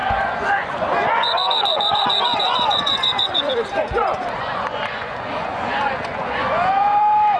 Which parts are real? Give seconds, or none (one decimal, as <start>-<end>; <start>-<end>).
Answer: 3.5-4.0; 7.0-7.4